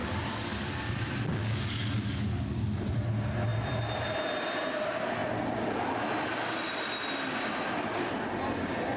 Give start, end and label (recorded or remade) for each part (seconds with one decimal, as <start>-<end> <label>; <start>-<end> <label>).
0.0-0.6 remade; 0.6-1.4 recorded; 1.4-2.9 remade; 2.9-9.0 recorded